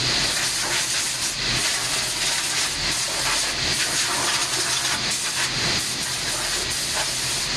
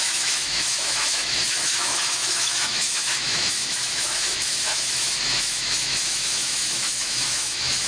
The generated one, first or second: second